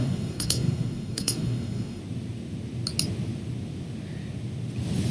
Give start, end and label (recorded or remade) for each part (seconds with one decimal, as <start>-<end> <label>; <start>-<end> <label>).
0.0-2.0 remade; 2.0-5.1 recorded